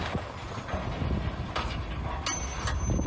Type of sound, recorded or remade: recorded